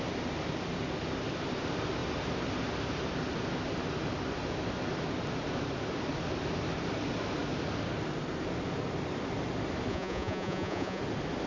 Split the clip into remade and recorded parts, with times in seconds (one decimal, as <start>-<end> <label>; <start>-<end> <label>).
0.0-9.9 recorded; 9.9-11.0 remade; 11.0-11.5 recorded